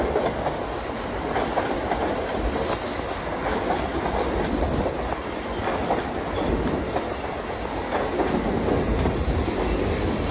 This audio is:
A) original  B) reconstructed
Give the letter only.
A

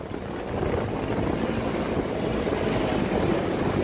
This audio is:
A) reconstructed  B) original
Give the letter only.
B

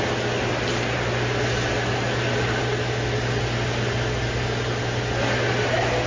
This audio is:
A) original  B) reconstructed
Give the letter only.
A